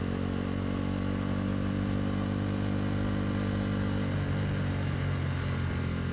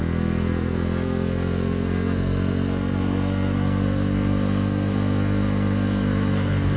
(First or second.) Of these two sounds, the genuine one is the first